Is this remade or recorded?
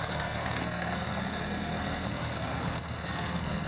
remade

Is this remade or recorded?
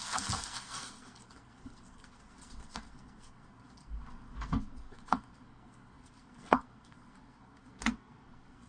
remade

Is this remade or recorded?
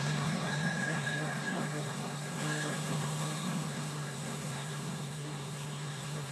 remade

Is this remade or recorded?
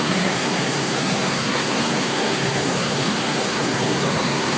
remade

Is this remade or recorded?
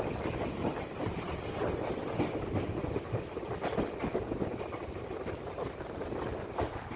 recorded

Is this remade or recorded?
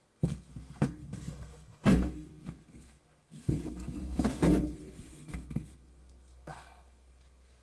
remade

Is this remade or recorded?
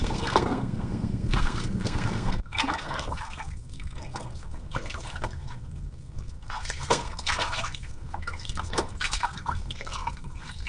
remade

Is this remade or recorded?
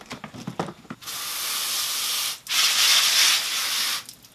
recorded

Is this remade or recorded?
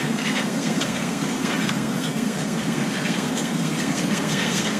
remade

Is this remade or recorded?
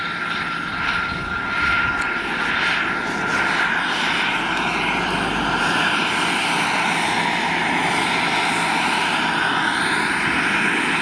recorded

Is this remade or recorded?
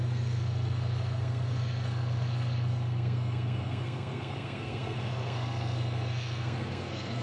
remade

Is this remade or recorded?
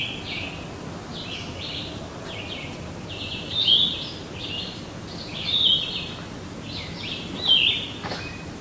recorded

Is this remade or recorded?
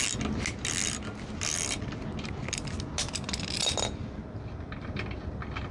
recorded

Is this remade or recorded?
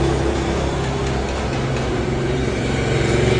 recorded